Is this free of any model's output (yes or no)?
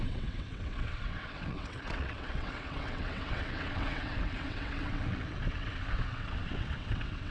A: no